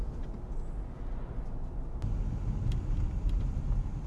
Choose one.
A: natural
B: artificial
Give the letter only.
A